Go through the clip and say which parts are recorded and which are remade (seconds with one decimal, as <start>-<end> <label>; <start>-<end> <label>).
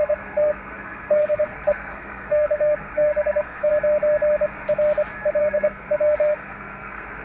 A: 0.0-3.7 remade; 3.7-5.4 recorded; 5.4-7.2 remade